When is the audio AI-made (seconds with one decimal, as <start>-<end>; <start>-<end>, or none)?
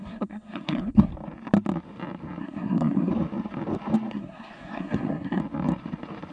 0.0-1.1; 2.4-3.1; 4.1-5.4